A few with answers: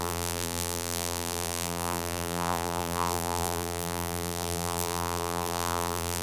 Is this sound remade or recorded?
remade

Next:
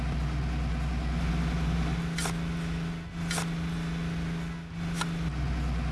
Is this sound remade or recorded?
recorded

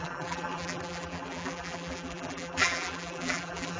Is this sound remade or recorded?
remade